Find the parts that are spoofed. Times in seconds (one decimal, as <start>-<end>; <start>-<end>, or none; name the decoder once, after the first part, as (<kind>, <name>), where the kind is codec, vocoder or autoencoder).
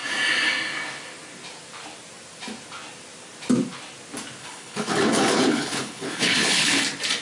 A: 4.4-6.8 (codec, HILCodec)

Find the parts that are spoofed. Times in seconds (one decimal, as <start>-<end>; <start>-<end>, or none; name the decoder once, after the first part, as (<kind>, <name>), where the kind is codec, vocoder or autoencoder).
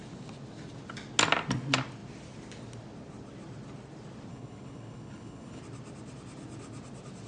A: 4.3-5.6 (codec, HILCodec)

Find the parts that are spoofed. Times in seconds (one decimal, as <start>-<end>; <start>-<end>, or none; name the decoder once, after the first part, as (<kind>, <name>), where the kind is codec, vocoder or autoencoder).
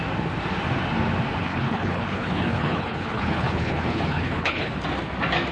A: 1.4-4.7 (codec, HILCodec)